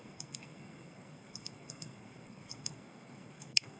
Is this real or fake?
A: fake